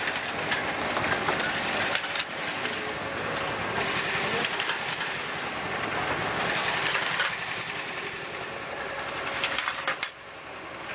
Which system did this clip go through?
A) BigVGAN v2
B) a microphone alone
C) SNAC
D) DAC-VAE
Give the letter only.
B